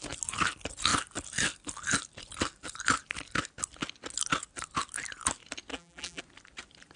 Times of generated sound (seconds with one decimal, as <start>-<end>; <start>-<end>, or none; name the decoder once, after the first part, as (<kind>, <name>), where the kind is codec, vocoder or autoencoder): 5.7-6.2 (vocoder, BigVGAN v2)